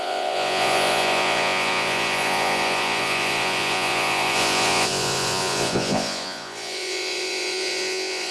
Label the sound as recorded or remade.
remade